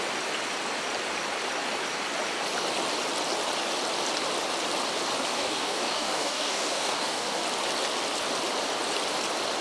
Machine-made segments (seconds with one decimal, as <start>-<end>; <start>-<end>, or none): 5.3-7.4